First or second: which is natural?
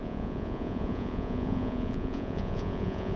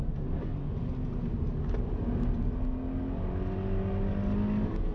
second